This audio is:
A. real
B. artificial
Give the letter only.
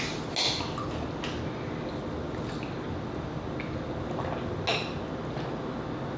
A